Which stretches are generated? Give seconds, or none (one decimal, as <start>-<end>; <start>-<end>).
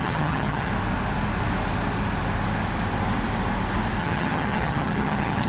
0.0-0.7; 4.0-5.5